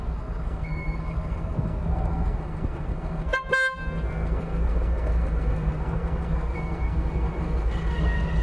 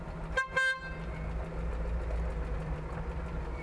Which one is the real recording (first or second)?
second